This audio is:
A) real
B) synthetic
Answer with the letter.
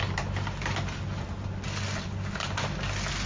A